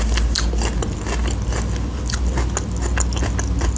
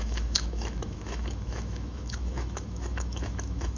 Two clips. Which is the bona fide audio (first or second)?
first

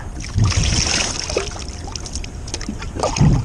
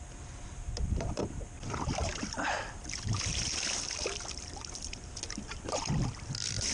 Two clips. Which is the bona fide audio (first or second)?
first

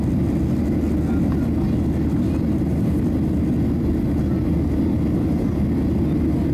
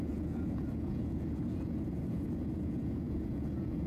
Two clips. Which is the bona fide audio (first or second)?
first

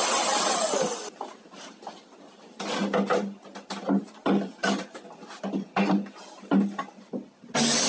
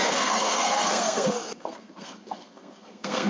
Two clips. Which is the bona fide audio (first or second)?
first